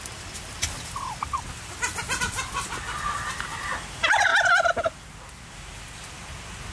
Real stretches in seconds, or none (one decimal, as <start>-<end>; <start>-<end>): 4.3-5.5